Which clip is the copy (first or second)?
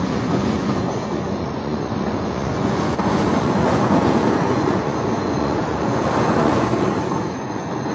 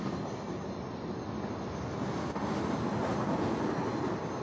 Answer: first